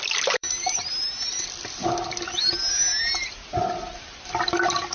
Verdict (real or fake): fake